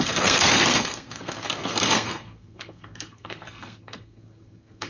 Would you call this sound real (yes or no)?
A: no